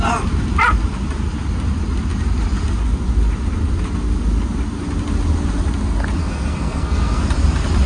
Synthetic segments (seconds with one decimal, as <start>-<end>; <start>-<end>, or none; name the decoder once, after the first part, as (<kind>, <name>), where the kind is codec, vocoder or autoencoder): 6.2-7.2 (codec, SNAC)

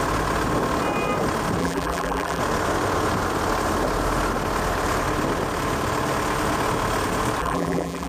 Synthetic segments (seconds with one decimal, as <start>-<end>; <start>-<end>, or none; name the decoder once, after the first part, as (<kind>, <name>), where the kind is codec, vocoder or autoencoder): 1.6-2.4 (vocoder, BigVGAN v2); 7.4-8.1